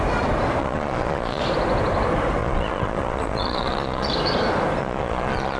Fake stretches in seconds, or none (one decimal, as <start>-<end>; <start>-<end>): 0.6-1.4; 2.4-4.1; 4.8-5.6